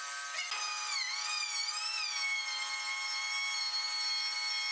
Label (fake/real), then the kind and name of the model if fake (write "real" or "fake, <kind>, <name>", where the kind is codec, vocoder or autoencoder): real